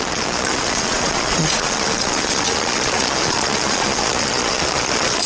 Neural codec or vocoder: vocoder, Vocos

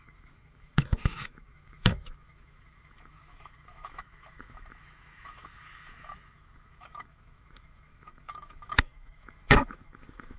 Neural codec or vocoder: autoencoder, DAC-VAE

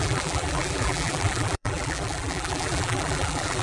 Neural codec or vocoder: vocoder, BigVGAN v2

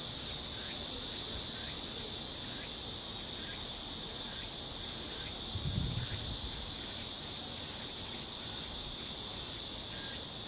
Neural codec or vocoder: none